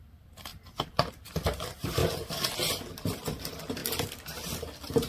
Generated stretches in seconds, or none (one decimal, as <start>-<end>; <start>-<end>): 0.0-0.5; 1.1-2.0; 2.7-3.8